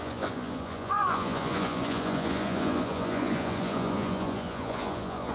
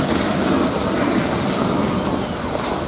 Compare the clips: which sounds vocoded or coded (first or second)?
first